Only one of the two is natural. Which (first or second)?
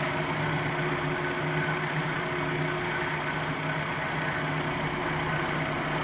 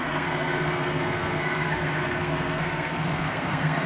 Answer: first